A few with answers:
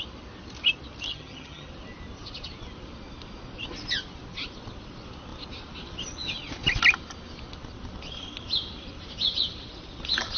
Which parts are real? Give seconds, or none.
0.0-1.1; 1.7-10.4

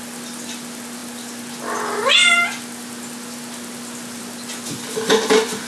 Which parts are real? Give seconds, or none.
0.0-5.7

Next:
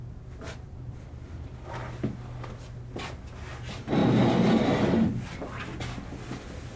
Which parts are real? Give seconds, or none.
0.0-6.8

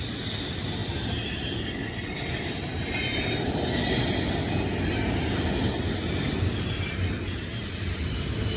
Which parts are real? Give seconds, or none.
0.0-0.8; 4.4-8.6

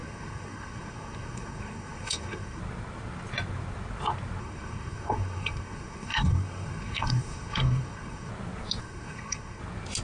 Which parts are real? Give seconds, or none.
2.6-4.4; 8.3-8.8; 9.6-10.0

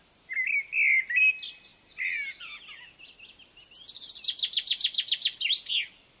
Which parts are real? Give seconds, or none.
0.0-6.2